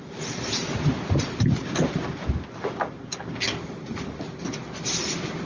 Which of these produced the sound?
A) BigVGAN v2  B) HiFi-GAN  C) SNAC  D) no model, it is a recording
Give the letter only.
D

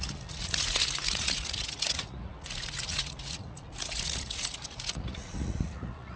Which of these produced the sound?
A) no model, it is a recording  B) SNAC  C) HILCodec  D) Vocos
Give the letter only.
D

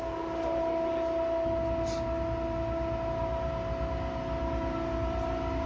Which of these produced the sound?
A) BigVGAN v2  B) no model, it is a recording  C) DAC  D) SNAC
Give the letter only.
B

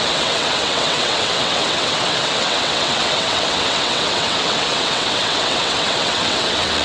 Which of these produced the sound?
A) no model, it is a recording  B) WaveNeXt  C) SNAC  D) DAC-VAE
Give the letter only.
B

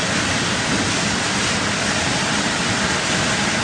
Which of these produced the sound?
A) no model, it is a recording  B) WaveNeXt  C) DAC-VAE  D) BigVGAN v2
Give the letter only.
A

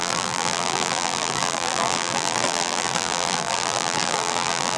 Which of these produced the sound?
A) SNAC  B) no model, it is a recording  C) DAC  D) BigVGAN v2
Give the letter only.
D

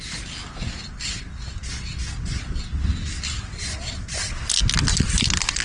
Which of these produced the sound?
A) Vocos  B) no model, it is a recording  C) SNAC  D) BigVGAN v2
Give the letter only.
B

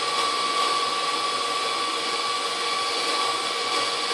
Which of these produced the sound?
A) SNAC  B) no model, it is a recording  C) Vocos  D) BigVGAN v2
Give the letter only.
C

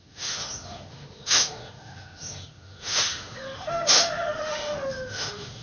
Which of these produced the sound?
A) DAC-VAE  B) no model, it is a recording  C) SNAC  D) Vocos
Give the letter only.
A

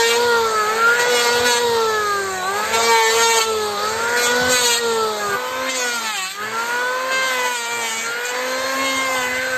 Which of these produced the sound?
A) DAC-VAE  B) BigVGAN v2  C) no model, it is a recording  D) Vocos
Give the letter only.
C